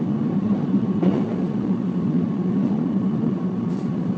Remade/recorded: remade